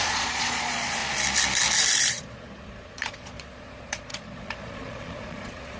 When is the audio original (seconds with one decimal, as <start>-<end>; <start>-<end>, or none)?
1.0-2.1